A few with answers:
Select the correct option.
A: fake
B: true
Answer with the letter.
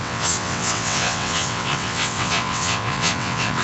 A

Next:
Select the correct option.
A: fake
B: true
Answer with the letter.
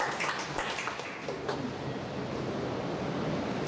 B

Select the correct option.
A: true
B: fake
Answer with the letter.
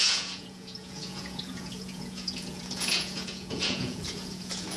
B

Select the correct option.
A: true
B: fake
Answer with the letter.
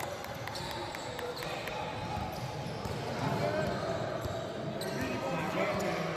A